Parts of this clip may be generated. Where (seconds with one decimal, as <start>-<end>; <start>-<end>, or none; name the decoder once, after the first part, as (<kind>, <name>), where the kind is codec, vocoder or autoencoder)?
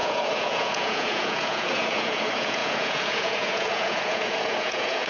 0.0-5.1 (vocoder, Vocos)